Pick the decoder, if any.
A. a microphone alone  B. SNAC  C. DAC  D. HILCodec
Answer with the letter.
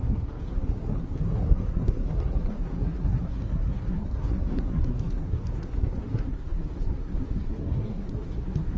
B